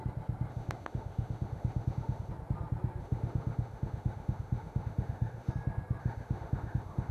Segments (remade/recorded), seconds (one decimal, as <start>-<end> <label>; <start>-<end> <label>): 0.0-0.5 recorded; 0.5-2.3 remade; 2.3-3.0 recorded; 3.0-5.5 remade; 5.5-6.0 recorded; 6.0-7.1 remade